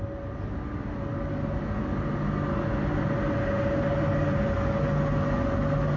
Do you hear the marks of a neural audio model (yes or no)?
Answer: no